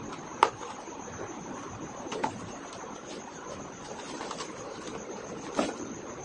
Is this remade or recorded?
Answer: recorded